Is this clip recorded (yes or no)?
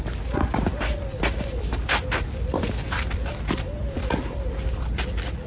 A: no